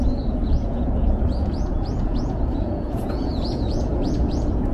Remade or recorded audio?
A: remade